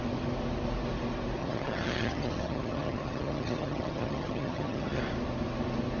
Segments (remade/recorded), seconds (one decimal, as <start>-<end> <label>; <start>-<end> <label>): 0.0-1.4 recorded; 1.4-5.0 remade; 5.0-6.0 recorded